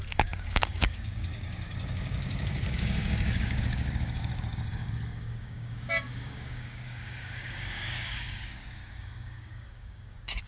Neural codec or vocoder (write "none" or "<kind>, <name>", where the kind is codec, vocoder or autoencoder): codec, DAC